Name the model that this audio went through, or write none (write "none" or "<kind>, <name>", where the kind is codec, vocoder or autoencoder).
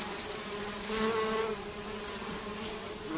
none